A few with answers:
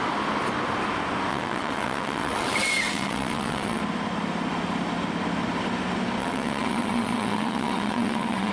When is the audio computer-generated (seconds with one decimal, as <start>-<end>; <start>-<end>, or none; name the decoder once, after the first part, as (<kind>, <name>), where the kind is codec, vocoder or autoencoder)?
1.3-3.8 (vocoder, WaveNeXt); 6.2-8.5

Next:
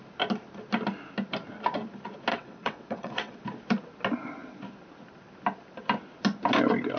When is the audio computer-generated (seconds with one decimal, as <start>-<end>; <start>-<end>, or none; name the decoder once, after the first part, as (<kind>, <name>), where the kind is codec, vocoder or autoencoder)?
2.3-3.4 (vocoder, WaveNeXt)

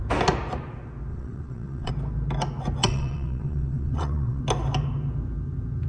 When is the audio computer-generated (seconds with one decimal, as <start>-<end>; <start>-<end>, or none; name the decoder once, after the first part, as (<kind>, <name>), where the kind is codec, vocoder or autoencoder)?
1.1-1.9 (vocoder, WaveNeXt); 2.8-4.4

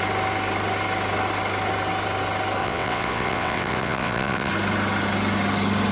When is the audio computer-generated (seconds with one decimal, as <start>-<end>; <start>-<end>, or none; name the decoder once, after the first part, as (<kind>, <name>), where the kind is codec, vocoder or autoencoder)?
2.6-4.5 (vocoder, WaveNeXt)

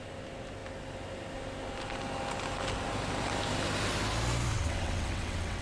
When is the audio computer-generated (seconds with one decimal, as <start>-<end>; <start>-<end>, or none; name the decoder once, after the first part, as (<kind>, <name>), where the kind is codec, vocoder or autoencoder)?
4.5-5.6 (vocoder, WaveNeXt)

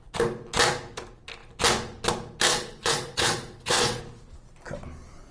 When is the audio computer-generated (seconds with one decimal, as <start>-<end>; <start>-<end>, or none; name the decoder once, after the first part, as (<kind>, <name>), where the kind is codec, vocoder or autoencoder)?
2.5-4.0 (vocoder, WaveNeXt)

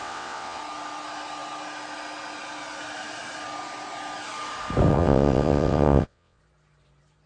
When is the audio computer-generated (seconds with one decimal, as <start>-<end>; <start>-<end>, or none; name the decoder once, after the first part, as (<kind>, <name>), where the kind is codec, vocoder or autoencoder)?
0.0-0.6 (vocoder, WaveNeXt); 4.9-6.4

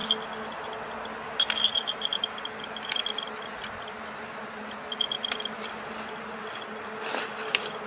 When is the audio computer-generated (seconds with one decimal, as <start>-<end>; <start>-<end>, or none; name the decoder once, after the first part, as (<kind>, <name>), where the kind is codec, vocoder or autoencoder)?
none